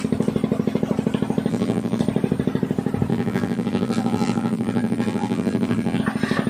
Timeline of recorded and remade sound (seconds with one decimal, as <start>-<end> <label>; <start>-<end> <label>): 0.0-1.5 recorded; 1.5-2.0 remade; 2.0-3.1 recorded; 3.1-6.0 remade; 6.0-6.5 recorded